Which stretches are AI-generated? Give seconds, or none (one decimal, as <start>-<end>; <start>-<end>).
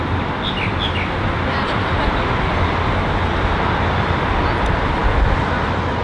none